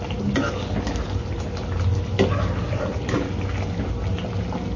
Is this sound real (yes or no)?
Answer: yes